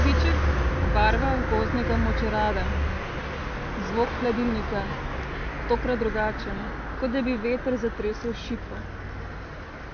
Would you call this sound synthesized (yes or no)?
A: no